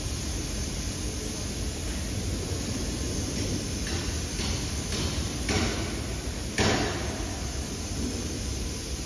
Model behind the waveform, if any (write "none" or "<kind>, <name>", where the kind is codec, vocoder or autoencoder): none